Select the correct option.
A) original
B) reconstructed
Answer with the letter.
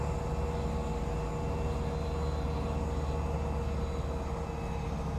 A